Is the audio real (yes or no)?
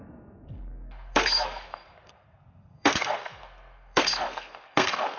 no